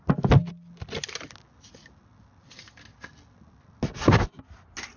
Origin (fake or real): real